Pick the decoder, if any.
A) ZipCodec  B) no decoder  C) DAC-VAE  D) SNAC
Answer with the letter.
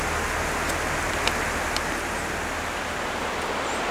B